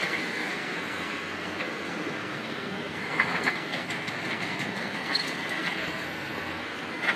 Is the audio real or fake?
fake